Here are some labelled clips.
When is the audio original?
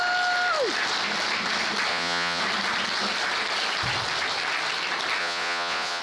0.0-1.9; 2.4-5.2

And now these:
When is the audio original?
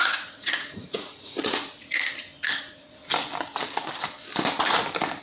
2.1-2.6; 3.0-5.2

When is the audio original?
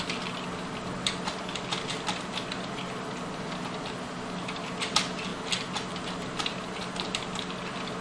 0.0-8.0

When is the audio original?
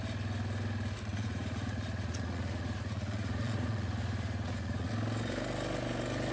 0.0-1.1; 4.9-6.3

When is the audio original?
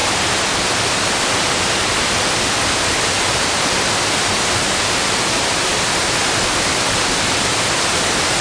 0.0-8.4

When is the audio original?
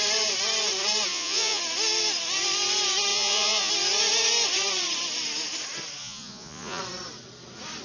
0.0-1.1; 1.6-3.1; 3.7-6.0; 6.8-7.8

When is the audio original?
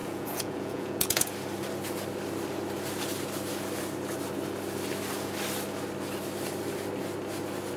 1.3-7.8